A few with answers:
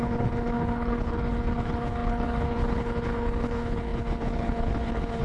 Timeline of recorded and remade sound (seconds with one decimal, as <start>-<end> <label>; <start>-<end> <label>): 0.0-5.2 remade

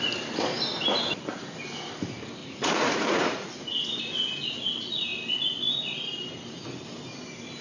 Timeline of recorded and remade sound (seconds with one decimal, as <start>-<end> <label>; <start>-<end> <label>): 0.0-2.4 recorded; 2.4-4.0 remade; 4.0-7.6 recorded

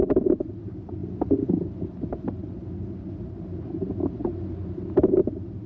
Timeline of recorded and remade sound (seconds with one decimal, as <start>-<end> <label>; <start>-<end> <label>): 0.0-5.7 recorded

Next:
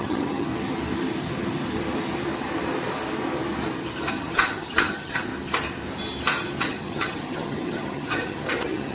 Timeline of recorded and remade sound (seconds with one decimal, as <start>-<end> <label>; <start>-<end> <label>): 0.0-0.5 remade; 0.5-4.1 recorded; 4.1-5.3 remade; 5.3-6.6 recorded; 6.6-8.9 remade

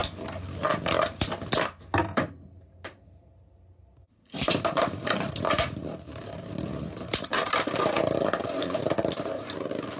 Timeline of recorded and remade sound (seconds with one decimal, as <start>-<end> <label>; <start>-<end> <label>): 0.0-4.5 recorded; 4.5-7.3 remade; 7.3-8.4 recorded; 8.4-10.0 remade

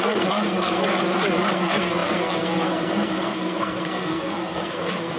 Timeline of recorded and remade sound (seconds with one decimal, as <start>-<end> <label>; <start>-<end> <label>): 0.0-0.9 remade; 0.9-1.5 recorded; 1.5-5.2 remade

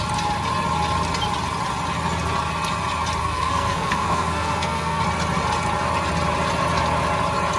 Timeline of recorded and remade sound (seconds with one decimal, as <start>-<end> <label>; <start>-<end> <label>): 0.0-3.2 recorded; 3.2-5.0 remade; 5.0-7.6 recorded